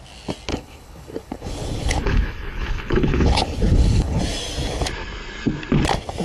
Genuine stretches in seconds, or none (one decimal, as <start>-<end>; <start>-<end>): 0.0-0.5; 4.2-6.2